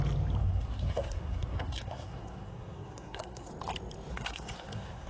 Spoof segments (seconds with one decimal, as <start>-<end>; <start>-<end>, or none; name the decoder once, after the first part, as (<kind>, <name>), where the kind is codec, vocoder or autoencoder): 0.4-3.5 (codec, SNAC); 4.1-5.1